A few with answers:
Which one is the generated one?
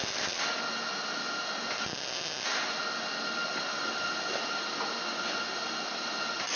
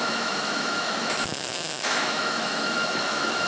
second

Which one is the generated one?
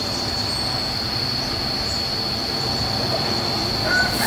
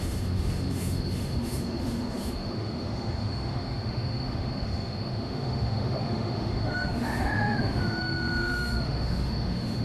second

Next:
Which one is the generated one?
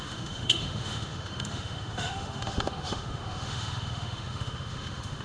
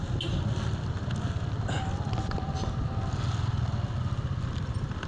first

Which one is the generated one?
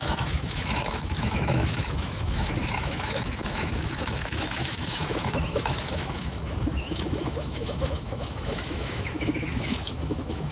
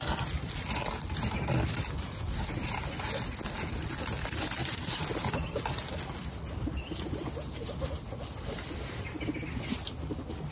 first